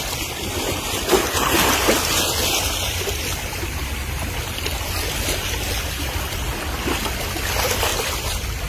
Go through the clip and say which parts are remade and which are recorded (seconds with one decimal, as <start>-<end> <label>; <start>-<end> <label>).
0.0-8.7 recorded